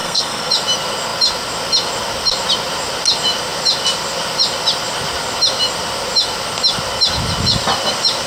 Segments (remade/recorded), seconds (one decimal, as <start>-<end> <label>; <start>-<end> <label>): 0.0-0.5 remade; 0.5-8.3 recorded